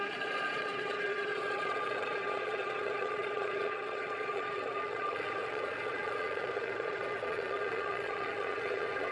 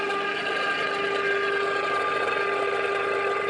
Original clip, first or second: second